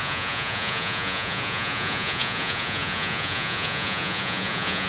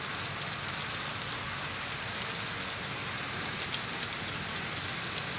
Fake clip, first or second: first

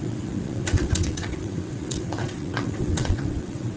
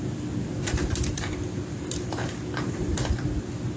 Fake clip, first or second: first